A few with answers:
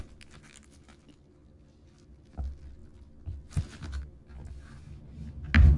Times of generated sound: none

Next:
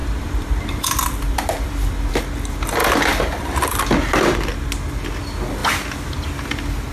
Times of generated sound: 0.0-2.1 (vocoder, BigVGAN v2); 2.8-4.5

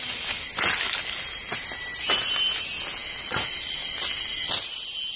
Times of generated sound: none